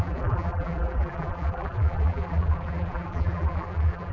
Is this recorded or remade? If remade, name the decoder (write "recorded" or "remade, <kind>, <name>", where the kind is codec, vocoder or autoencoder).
remade, vocoder, BigVGAN v2